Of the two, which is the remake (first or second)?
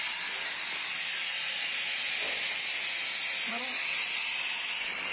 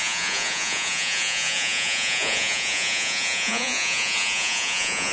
second